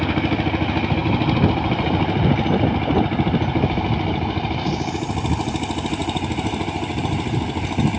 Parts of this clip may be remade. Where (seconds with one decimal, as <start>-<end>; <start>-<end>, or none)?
6.0-7.0